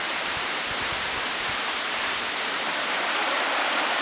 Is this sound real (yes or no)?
no